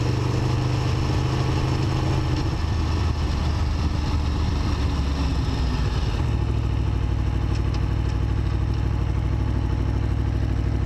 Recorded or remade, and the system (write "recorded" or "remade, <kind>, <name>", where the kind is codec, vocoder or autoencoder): recorded